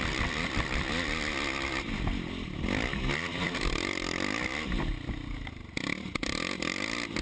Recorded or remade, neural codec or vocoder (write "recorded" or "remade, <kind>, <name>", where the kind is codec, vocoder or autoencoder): recorded